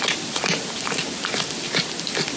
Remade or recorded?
recorded